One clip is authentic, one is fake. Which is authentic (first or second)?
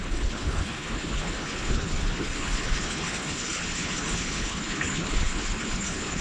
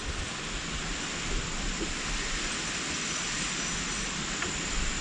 second